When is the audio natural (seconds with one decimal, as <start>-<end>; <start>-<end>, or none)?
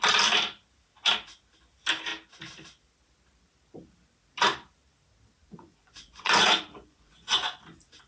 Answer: 0.0-5.4; 7.6-8.1